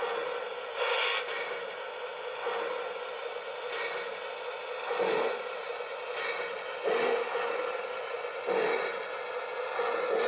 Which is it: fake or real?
real